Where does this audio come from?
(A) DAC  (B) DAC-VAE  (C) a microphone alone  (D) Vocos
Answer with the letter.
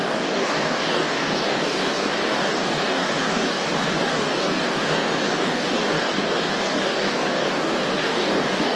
A